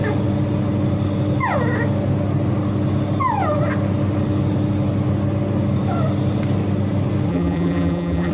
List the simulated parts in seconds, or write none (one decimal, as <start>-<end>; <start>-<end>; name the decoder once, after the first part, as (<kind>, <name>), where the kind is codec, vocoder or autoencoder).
7.3-8.3 (vocoder, BigVGAN v2)